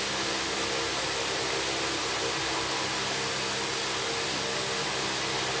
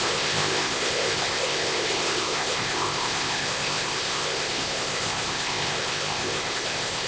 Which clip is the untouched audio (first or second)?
first